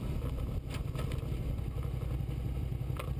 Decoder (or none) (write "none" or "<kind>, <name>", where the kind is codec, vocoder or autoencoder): none